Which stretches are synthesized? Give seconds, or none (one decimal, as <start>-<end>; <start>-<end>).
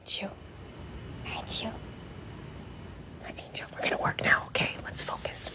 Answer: none